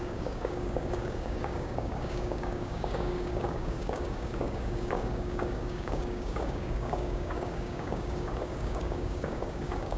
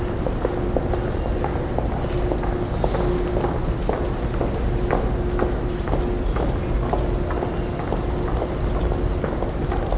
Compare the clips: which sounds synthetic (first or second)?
first